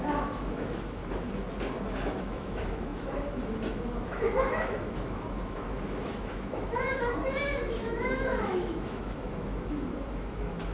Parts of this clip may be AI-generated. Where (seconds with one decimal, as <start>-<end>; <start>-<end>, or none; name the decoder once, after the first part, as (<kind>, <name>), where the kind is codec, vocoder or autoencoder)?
0.0-1.0 (autoencoder, DAC-VAE); 2.1-10.7